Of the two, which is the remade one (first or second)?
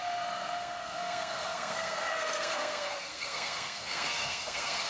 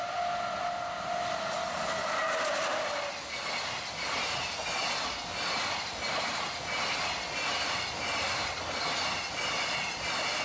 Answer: first